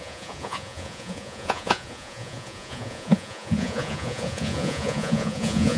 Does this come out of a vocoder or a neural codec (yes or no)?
yes